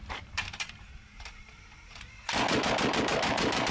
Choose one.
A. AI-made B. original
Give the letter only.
A